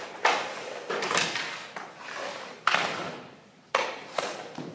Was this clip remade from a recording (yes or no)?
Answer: yes